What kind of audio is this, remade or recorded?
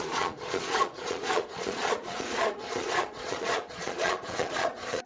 remade